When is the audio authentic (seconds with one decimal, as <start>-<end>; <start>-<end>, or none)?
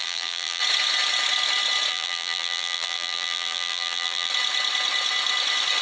0.6-1.9; 4.3-5.8